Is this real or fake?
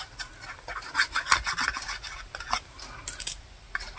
real